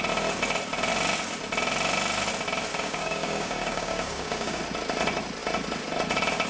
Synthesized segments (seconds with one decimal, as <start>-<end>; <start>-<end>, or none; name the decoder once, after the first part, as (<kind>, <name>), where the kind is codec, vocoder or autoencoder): 2.7-4.6 (codec, DAC)